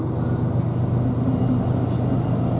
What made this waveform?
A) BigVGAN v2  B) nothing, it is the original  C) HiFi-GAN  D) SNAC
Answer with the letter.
B